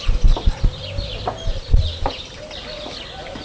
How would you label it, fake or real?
real